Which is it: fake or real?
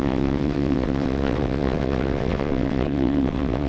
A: fake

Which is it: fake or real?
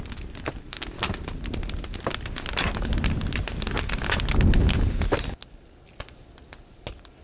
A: real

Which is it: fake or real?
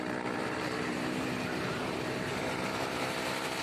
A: fake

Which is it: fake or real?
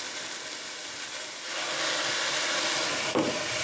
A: real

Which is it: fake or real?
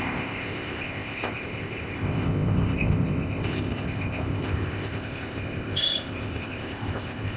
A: fake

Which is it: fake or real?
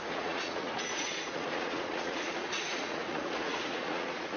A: fake